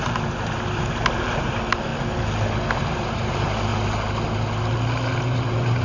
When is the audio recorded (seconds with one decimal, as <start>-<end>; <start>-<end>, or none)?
1.9-2.7; 3.7-5.2